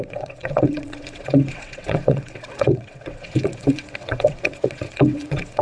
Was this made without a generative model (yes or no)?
no